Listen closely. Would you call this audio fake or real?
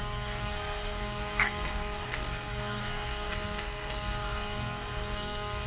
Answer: fake